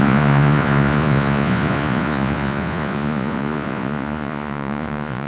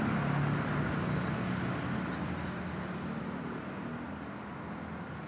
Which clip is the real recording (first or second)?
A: second